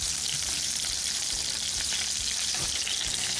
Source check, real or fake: fake